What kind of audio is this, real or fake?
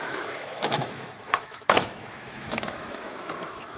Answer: fake